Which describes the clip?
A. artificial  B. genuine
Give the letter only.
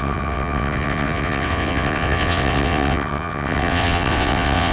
A